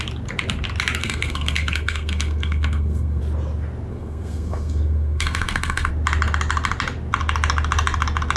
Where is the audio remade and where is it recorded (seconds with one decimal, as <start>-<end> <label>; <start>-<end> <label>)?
0.0-1.0 recorded; 1.0-3.2 remade; 3.2-3.9 recorded; 3.9-5.9 remade; 5.9-8.4 recorded